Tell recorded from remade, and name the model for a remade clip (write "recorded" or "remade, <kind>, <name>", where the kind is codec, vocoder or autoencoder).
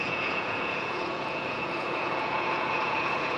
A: remade, vocoder, Vocos